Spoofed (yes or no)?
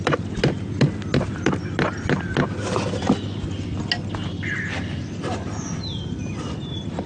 no